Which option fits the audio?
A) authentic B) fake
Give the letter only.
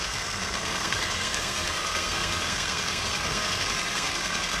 B